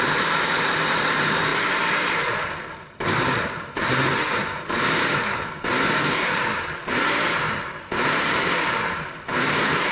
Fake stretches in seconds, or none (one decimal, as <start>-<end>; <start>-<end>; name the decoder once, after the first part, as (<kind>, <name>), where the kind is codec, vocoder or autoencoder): 0.0-9.9 (vocoder, BigVGAN v2)